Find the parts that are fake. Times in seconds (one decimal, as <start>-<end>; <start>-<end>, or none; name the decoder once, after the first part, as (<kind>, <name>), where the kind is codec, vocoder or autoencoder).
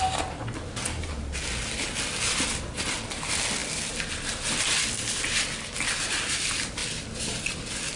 none